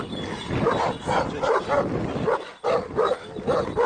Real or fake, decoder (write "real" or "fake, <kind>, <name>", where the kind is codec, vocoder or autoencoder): real